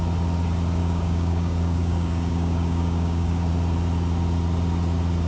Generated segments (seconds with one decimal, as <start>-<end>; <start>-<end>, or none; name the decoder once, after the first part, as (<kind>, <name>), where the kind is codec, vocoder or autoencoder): 0.8-3.5 (codec, DAC)